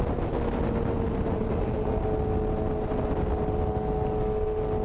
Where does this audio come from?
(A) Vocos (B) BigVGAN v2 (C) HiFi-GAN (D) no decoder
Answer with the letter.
D